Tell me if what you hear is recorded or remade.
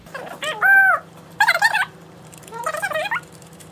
remade